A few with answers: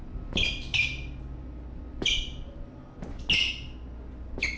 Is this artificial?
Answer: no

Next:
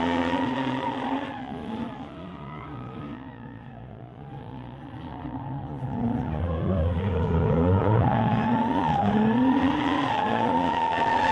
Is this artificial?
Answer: yes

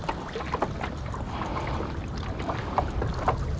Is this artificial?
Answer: no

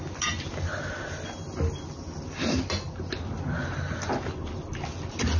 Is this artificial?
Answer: no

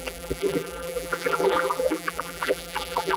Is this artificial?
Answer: yes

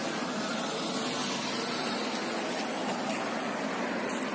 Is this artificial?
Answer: no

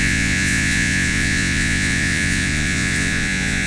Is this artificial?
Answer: yes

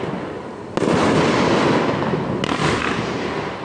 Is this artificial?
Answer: no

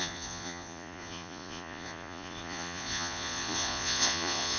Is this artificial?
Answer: yes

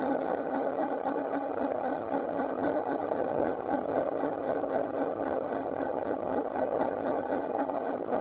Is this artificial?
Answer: yes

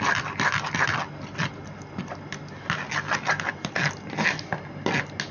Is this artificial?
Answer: no